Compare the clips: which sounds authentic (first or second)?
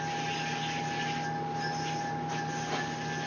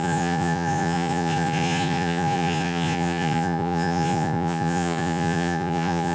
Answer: first